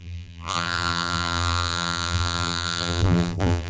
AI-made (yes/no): yes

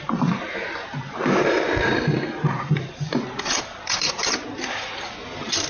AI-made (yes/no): yes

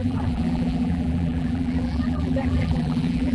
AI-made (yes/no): yes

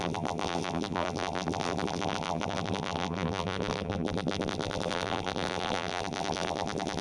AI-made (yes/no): yes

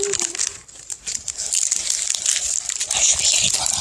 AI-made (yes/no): no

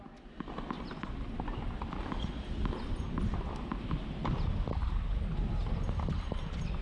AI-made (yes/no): no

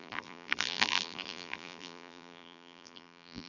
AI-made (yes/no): yes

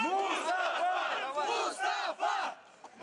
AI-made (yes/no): no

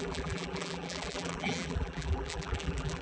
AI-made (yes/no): yes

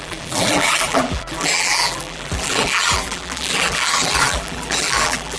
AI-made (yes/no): yes